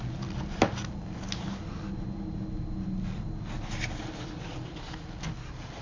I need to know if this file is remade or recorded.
recorded